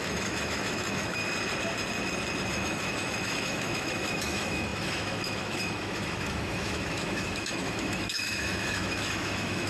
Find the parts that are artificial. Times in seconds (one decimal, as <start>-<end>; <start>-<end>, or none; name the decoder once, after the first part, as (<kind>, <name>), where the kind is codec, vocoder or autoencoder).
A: 0.0-1.2 (autoencoder, DAC-VAE); 2.5-9.7